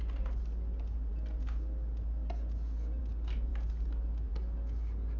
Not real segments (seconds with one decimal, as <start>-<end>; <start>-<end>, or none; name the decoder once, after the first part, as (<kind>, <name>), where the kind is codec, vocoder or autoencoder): none